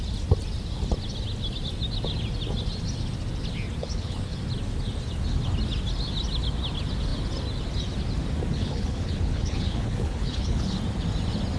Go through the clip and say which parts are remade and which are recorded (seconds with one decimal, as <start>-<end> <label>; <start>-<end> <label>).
0.0-3.8 recorded; 3.8-4.4 remade; 4.4-8.5 recorded; 8.5-10.8 remade; 10.8-11.6 recorded